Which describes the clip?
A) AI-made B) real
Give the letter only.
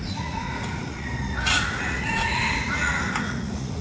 A